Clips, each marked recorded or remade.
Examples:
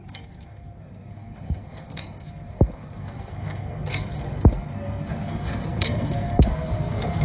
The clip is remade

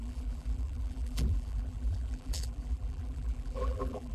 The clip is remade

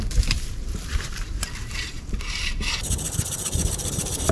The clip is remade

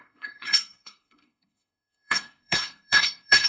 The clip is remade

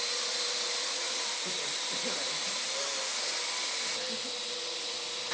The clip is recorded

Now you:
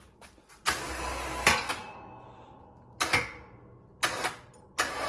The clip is recorded